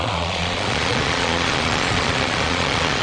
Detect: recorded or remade remade